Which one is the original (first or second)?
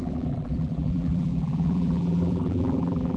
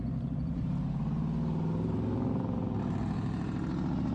second